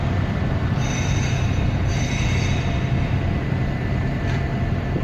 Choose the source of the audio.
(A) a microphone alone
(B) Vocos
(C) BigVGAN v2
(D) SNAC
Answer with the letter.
A